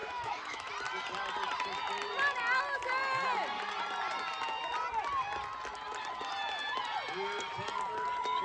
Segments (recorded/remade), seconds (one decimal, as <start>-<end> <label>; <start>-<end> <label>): 0.0-0.7 remade; 0.7-8.4 recorded

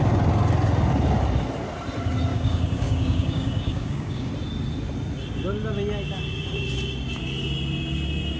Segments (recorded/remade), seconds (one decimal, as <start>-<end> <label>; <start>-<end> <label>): 0.0-2.3 recorded; 2.3-4.3 remade; 4.3-8.4 recorded